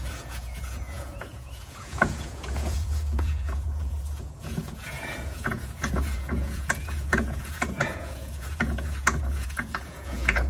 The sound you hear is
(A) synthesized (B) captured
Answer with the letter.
A